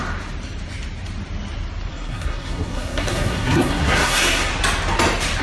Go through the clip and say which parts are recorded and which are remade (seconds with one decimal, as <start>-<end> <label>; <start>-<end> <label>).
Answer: 0.0-1.9 recorded; 1.9-4.5 remade; 4.5-5.4 recorded